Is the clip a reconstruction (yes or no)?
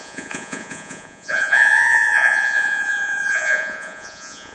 yes